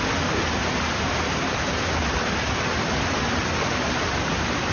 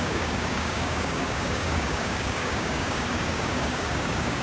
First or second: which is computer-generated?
second